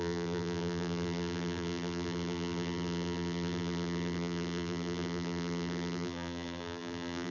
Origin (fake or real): fake